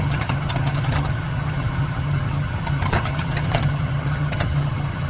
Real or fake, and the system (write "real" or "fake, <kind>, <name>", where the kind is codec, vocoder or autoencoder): fake, vocoder, HiFi-GAN